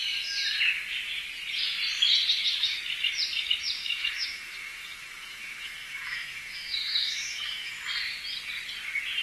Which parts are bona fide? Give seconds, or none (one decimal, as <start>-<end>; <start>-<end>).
0.0-3.8; 7.9-9.2